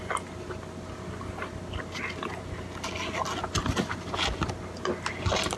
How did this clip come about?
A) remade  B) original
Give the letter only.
B